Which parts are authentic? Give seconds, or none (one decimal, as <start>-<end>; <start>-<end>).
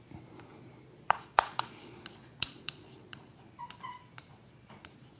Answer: 0.0-0.5; 3.3-4.1